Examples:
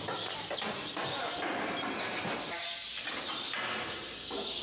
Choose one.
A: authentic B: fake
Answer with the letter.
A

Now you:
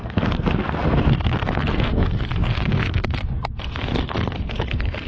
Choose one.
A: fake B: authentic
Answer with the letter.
A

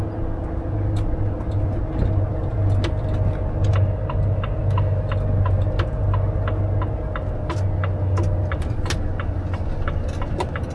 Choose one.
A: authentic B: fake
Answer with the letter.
A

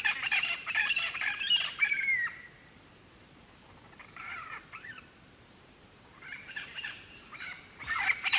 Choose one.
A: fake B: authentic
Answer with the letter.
A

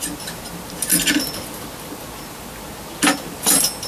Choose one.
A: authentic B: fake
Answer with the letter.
A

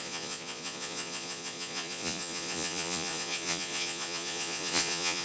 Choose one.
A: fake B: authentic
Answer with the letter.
A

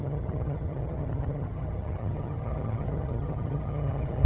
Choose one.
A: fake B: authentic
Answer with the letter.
A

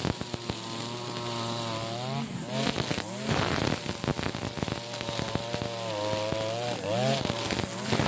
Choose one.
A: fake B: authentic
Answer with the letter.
B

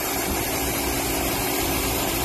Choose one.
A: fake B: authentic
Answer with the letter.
B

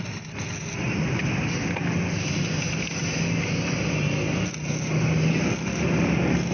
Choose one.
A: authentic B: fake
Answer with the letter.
A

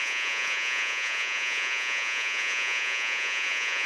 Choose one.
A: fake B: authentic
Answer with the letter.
A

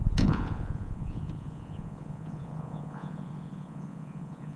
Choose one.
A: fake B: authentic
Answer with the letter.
A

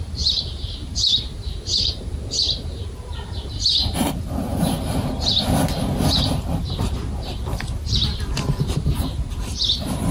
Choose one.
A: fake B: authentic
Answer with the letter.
A